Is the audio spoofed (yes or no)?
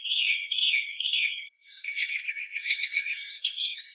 yes